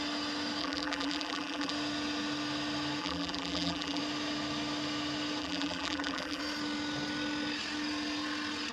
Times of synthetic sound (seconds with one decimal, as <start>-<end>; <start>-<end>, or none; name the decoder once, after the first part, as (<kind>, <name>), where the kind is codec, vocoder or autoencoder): 0.6-1.7 (vocoder, BigVGAN v2); 3.0-4.0; 5.4-6.4

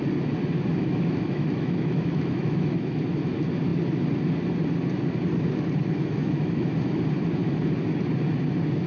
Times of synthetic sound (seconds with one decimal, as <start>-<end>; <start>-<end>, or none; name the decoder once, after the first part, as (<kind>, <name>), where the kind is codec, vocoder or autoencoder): 0.7-3.0 (autoencoder, DAC-VAE); 6.2-7.0

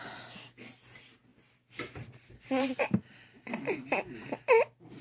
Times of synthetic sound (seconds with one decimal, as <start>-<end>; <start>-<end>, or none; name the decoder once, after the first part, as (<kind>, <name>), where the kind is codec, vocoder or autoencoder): 1.3-3.0 (vocoder, BigVGAN v2)

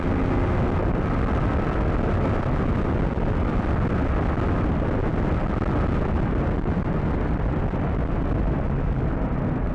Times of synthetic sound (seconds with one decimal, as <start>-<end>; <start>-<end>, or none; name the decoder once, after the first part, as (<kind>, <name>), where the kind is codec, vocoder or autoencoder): none

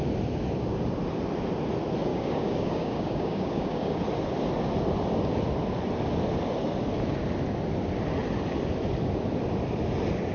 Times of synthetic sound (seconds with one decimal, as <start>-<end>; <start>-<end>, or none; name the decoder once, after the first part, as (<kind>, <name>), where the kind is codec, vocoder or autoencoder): 2.1-4.0 (codec, DAC)

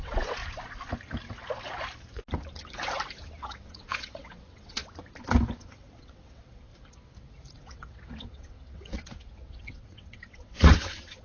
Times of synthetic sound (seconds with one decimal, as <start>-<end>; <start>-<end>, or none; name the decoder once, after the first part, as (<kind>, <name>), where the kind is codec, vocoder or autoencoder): 0.0-0.4 (vocoder, WaveNeXt); 3.4-4.8; 5.6-6.7; 7.5-11.2

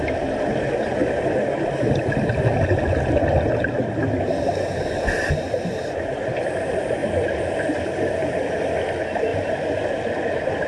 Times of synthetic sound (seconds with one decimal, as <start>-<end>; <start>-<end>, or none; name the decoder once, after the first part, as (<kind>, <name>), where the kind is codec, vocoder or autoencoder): 7.0-7.7 (vocoder, BigVGAN v2)

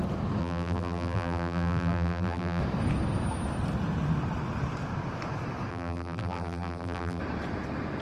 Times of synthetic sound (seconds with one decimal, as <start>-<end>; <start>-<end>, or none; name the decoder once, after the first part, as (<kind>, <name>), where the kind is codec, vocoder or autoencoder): 0.4-2.6 (vocoder, BigVGAN v2); 5.7-7.2